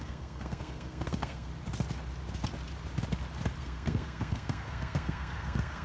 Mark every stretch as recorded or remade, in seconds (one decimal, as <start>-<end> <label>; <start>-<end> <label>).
0.0-1.5 remade; 1.5-3.6 recorded; 3.6-5.8 remade